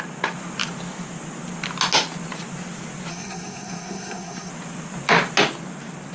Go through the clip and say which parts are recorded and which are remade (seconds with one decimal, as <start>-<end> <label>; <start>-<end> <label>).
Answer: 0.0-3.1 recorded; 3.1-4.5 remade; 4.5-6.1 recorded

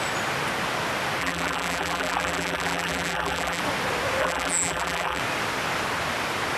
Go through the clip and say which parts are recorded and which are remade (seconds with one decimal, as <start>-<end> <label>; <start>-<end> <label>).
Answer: 0.0-1.2 recorded; 1.2-3.6 remade; 3.6-4.2 recorded; 4.2-5.2 remade; 5.2-6.6 recorded

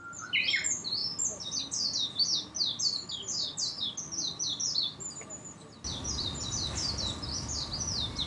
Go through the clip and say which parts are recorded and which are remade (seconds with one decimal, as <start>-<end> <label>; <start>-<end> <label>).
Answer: 0.0-8.3 recorded

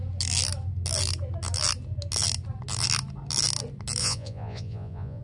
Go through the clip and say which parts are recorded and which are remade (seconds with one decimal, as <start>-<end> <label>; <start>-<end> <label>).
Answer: 0.0-4.0 recorded; 4.0-5.2 remade